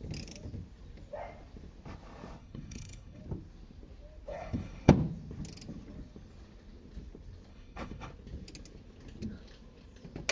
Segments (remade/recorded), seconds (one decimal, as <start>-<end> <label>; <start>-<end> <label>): 0.0-2.4 recorded; 2.4-3.2 remade; 3.2-4.3 recorded; 4.3-4.9 remade; 4.9-7.5 recorded; 7.5-8.1 remade; 8.1-10.3 recorded